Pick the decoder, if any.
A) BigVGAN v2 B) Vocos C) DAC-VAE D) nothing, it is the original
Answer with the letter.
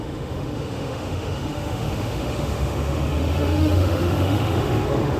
C